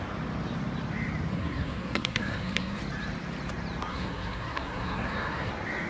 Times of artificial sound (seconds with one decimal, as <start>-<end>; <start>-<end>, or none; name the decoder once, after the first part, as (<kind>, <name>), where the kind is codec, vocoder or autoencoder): 1.3-2.8 (codec, SNAC); 3.9-5.5